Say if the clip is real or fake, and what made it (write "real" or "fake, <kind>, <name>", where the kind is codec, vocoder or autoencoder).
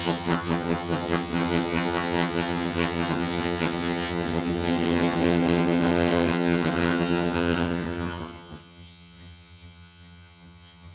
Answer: fake, vocoder, HiFi-GAN